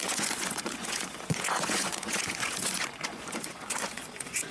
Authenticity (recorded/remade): remade